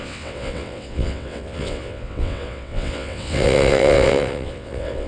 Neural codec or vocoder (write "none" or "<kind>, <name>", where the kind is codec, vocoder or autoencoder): vocoder, WaveNeXt